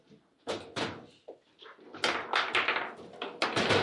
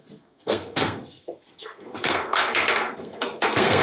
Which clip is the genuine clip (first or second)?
first